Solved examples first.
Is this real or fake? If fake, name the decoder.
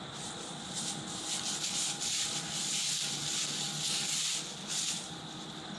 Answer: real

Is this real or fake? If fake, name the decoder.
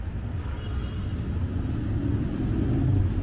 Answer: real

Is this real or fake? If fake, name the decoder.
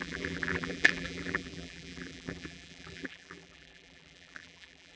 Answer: fake, vocoder, BigVGAN v2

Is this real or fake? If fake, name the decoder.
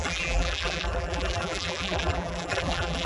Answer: fake, vocoder, BigVGAN v2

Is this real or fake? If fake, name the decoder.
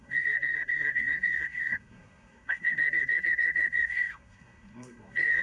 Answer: fake, codec, SNAC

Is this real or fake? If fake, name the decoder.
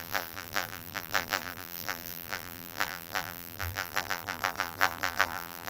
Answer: fake, vocoder, BigVGAN v2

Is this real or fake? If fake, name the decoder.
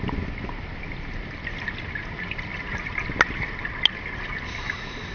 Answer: real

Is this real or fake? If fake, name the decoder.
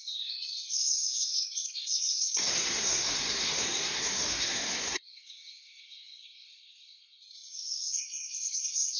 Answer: fake, codec, SNAC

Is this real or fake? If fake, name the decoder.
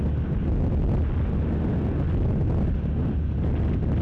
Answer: real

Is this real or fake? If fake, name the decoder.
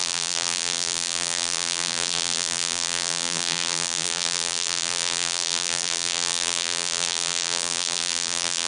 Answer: fake, vocoder, BigVGAN v2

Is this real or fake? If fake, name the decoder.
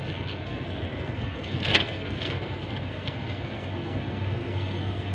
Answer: fake, codec, SNAC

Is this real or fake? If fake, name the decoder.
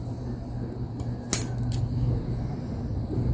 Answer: real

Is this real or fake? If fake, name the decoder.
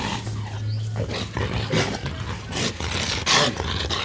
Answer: real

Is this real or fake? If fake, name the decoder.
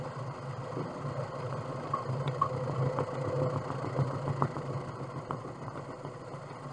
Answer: real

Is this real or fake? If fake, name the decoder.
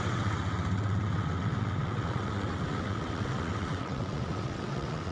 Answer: fake, vocoder, WaveNeXt